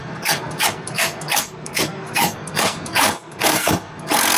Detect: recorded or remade remade